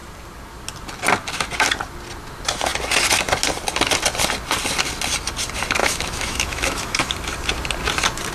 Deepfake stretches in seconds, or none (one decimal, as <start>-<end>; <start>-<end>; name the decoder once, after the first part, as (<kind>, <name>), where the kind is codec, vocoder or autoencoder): 5.8-7.1 (autoencoder, DAC-VAE)

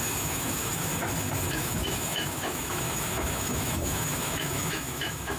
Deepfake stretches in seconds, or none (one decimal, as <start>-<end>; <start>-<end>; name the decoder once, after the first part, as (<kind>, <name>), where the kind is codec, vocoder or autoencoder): 0.0-0.9 (autoencoder, DAC-VAE); 1.5-5.4